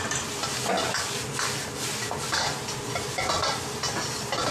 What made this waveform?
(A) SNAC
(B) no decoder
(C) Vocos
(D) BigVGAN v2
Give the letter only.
B